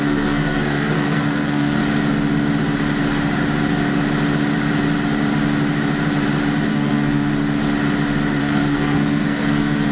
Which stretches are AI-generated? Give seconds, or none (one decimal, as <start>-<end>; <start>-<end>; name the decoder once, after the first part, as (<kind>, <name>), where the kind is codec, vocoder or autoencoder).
0.0-1.8 (codec, SNAC); 6.7-7.3; 8.4-9.9

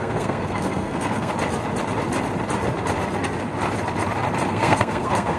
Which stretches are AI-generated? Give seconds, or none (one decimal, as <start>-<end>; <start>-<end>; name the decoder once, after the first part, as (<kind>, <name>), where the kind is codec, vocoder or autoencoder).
0.0-1.3 (codec, SNAC); 4.5-5.4

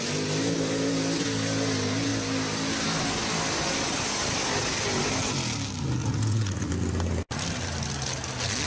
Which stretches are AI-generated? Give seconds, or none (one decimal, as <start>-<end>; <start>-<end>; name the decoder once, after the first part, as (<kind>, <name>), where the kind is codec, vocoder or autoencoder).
6.0-6.7 (vocoder, Vocos)

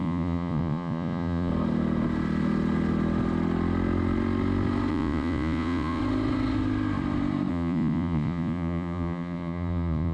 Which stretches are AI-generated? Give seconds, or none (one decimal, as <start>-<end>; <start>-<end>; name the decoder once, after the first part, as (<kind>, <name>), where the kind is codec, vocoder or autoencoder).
0.0-1.5 (vocoder, Vocos); 4.9-6.0; 7.5-10.1

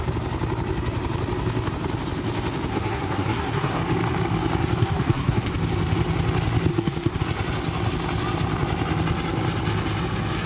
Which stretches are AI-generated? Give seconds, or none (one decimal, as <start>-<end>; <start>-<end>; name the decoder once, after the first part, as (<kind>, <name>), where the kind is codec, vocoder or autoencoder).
2.7-3.8 (codec, SNAC); 4.8-5.5; 6.7-7.2

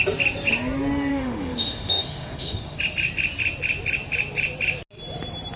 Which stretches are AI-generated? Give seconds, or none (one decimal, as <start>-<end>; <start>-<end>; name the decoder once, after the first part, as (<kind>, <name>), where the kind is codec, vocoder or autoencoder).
1.1-2.8 (autoencoder, DAC-VAE)

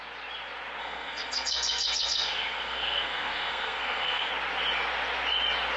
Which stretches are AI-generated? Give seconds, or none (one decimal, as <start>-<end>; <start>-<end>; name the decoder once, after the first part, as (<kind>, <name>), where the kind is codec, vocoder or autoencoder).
0.8-4.3 (codec, SNAC)